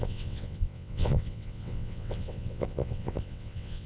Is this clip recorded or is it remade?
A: remade